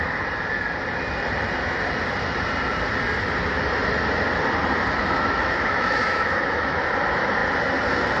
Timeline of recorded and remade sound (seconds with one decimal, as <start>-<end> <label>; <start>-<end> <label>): 0.0-5.0 recorded; 5.0-6.8 remade; 6.8-8.2 recorded